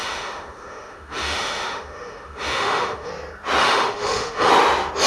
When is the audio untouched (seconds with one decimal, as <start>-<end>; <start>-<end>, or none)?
3.1-3.6; 4.5-5.1